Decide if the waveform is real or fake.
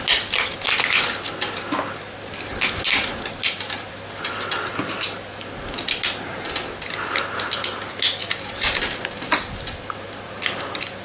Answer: real